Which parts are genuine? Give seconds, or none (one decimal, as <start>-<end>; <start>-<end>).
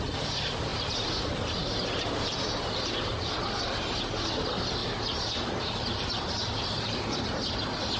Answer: 0.0-8.0